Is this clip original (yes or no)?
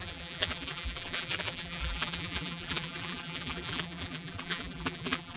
no